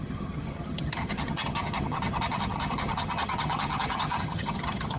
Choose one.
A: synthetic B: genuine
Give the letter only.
A